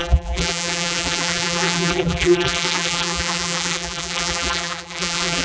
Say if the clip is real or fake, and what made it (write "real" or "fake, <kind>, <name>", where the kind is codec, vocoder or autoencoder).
fake, vocoder, BigVGAN v2